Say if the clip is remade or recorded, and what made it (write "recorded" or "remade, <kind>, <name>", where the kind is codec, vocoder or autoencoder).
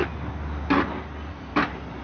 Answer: recorded